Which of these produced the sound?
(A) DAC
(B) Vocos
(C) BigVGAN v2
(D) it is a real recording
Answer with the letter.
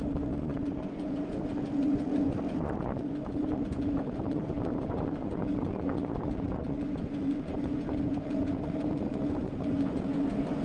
B